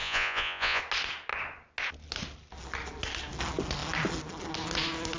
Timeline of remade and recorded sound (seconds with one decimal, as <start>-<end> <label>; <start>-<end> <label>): 0.0-0.8 remade; 0.8-5.2 recorded